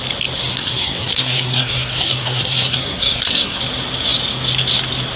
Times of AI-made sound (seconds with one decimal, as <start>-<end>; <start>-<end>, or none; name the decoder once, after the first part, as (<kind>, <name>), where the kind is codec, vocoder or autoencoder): 0.5-3.6 (codec, SNAC)